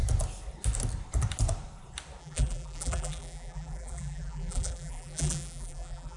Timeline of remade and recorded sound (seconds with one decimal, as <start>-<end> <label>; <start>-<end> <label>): 0.0-2.2 recorded; 2.2-6.2 remade